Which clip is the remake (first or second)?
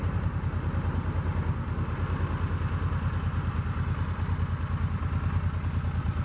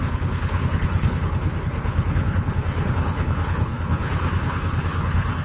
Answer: second